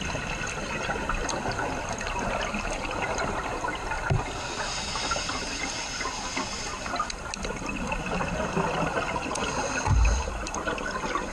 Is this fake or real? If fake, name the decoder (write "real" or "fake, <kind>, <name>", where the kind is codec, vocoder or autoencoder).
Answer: real